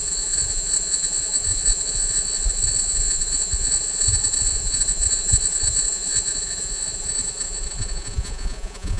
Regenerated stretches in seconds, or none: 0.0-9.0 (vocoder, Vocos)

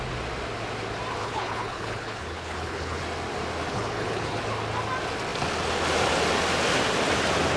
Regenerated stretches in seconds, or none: 1.2-3.0 (codec, HILCodec); 3.7-4.4

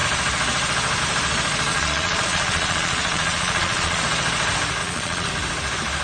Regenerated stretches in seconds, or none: 1.7-4.0 (vocoder, Vocos); 4.8-5.3

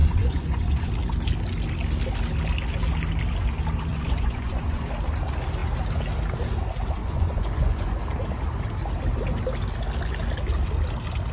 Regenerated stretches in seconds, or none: 0.0-0.9 (vocoder, Vocos); 3.9-4.9; 7.0-8.0

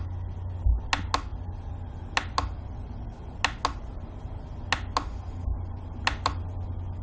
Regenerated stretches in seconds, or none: none

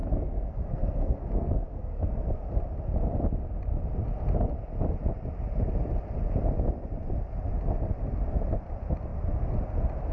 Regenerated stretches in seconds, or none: 0.0-2.4 (codec, SNAC)